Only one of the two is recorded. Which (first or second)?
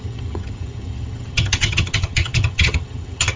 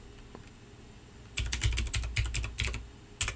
second